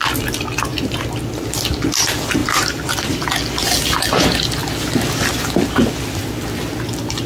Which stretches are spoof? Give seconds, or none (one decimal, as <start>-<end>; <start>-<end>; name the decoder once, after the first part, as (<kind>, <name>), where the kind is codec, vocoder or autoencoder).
0.7-1.2 (vocoder, BigVGAN v2); 2.4-3.3